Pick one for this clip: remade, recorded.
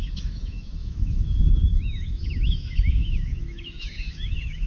remade